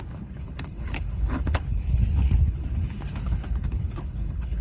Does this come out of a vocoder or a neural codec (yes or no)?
yes